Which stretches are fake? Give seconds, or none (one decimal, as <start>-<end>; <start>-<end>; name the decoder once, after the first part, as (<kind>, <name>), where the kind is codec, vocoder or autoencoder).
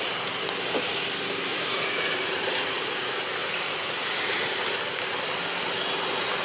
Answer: 1.5-2.9 (vocoder, Vocos); 3.4-4.2